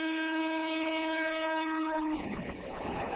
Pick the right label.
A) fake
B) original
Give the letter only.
A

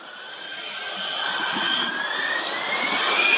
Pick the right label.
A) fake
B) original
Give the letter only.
B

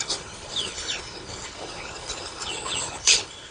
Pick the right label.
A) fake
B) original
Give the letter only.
A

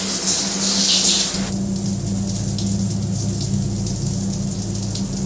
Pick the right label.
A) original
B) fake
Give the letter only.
A